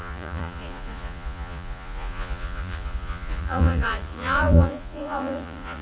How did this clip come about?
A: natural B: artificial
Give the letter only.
B